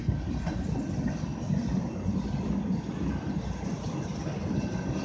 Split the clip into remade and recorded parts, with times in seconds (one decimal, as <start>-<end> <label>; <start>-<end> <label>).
0.0-5.0 recorded